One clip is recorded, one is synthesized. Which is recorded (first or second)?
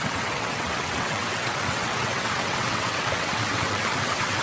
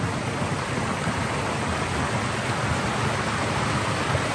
second